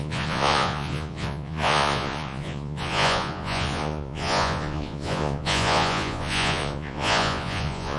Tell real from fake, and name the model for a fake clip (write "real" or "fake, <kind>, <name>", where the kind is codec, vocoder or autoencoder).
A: fake, vocoder, Vocos